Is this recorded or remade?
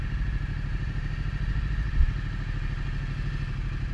recorded